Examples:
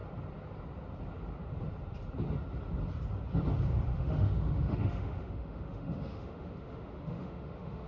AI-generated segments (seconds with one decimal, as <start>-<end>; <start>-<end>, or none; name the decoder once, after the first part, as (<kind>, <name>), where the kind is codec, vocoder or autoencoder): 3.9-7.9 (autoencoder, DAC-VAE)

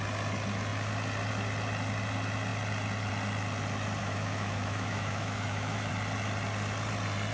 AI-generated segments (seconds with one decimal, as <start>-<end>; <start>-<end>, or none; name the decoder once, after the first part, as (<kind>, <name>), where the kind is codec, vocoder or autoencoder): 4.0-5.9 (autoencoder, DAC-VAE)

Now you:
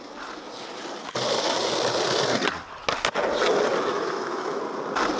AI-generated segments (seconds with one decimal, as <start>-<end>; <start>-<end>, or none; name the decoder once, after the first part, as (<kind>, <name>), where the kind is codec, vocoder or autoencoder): 3.9-4.6 (autoencoder, DAC-VAE)

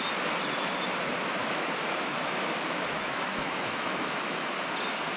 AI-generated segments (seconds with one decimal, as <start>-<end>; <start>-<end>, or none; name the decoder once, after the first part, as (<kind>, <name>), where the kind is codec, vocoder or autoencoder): 1.4-4.5 (autoencoder, DAC-VAE)

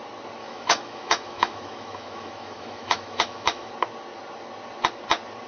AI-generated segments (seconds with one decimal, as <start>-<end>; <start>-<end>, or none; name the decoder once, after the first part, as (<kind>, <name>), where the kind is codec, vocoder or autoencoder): 0.4-3.7 (autoencoder, DAC-VAE)

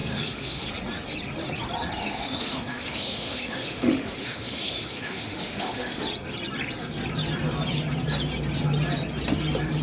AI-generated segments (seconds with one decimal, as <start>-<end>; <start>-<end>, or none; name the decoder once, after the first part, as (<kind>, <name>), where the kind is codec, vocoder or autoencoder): 0.0-0.7 (autoencoder, DAC-VAE); 2.0-6.0